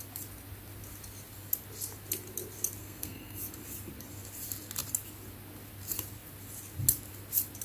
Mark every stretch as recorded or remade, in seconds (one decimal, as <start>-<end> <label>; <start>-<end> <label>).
0.0-2.8 recorded; 2.8-3.4 remade; 3.4-7.6 recorded